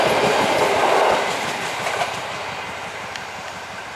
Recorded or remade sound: recorded